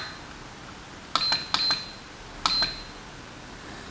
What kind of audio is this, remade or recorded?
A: recorded